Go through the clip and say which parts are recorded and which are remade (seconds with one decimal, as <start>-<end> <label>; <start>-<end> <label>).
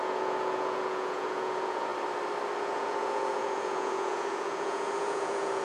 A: 0.0-1.9 remade; 1.9-2.6 recorded; 2.6-5.6 remade